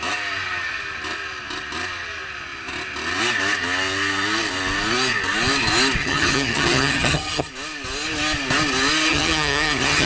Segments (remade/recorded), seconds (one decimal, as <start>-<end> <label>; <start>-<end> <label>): 0.0-6.0 recorded; 6.0-7.5 remade; 7.5-9.1 recorded; 9.1-10.1 remade